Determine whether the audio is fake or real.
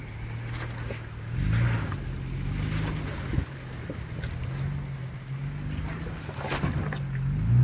real